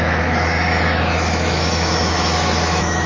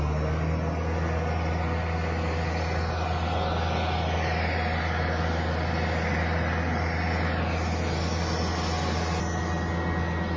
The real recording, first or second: second